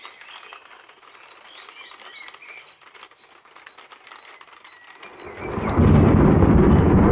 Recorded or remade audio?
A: recorded